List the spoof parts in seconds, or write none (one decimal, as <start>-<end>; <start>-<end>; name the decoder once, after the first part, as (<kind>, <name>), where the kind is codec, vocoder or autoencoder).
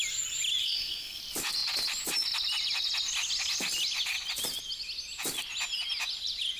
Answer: 0.6-1.2 (codec, SNAC)